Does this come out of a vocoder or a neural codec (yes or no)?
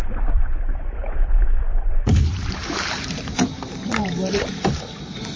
yes